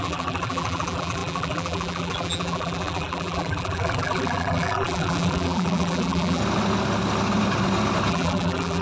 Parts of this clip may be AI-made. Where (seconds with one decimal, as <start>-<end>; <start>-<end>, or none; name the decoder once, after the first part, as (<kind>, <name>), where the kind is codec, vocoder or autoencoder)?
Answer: 0.0-6.4 (vocoder, BigVGAN v2); 8.1-8.8